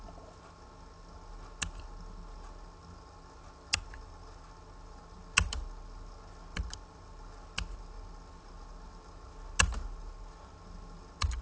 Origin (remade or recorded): recorded